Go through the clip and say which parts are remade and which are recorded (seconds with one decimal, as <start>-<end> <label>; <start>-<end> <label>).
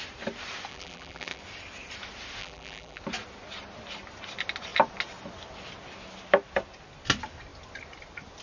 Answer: 0.0-0.7 recorded; 0.7-1.4 remade; 1.4-2.4 recorded; 2.4-3.0 remade; 3.0-8.4 recorded